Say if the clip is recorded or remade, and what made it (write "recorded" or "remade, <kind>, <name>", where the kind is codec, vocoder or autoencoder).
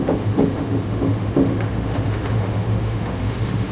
remade, autoencoder, DAC-VAE